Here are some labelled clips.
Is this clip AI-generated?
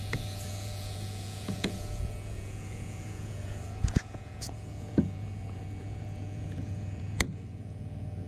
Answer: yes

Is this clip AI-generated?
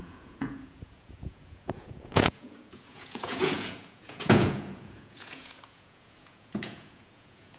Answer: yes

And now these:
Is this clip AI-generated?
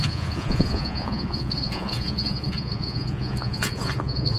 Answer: yes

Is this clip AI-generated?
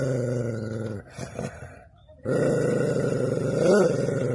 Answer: no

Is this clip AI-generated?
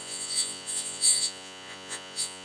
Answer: yes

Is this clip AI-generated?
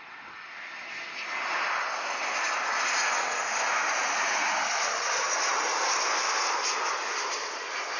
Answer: no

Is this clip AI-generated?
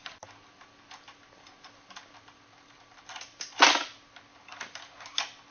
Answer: no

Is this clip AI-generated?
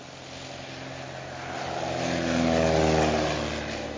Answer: no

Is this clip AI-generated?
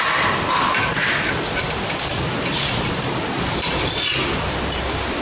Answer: no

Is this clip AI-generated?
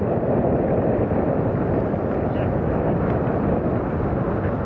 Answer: no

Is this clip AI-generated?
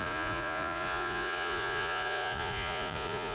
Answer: yes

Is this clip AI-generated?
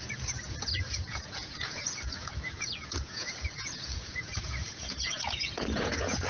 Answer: yes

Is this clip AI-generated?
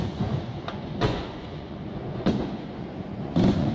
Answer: yes